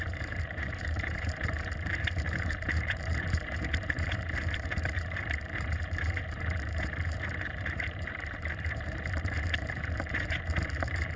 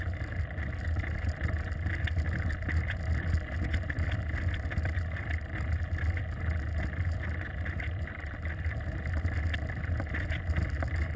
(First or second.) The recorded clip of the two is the second